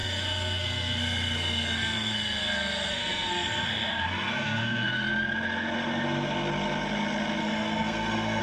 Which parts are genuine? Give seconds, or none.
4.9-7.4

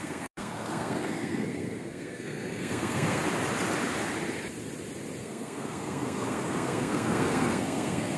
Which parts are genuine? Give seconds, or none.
3.2-5.2

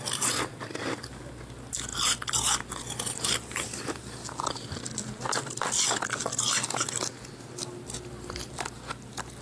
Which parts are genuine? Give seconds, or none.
0.0-9.4

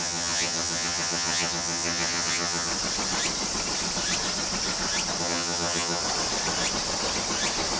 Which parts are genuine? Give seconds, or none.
2.7-5.2; 6.0-7.8